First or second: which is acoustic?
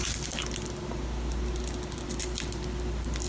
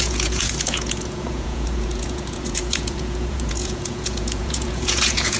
first